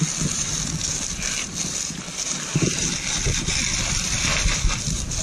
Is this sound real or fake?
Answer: fake